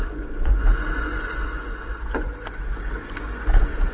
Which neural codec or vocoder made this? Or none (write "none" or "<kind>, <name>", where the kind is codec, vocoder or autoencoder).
vocoder, Vocos